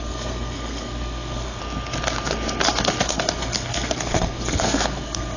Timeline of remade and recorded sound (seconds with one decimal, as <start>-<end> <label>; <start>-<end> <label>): 0.0-1.6 remade; 1.6-3.0 recorded; 3.0-5.4 remade